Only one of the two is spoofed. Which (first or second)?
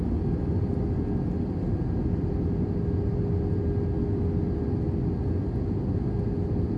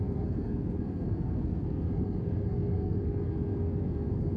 second